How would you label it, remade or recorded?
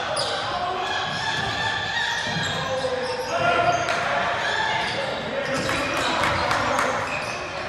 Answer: recorded